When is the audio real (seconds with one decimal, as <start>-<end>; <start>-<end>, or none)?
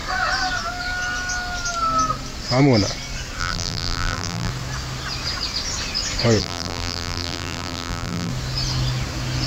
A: 0.0-3.4; 4.5-6.4; 8.3-9.5